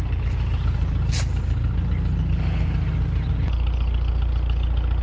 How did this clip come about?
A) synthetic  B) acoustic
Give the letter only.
B